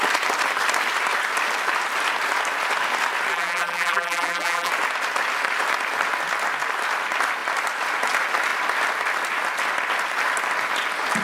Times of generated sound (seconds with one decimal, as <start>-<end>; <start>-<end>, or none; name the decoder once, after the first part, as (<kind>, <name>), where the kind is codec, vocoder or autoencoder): 3.3-4.7 (vocoder, BigVGAN v2)